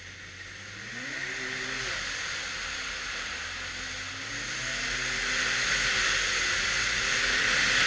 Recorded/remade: recorded